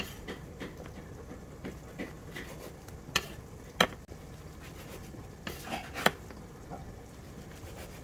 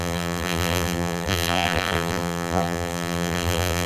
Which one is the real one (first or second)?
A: first